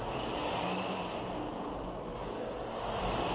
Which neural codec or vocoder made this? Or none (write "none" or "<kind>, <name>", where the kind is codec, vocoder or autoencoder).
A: none